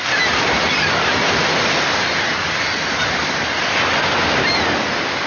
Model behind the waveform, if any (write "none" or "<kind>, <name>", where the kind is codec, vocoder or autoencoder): none